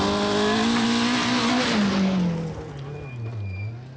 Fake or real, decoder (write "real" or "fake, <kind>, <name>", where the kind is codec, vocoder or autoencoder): real